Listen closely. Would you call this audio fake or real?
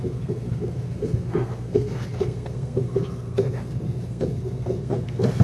fake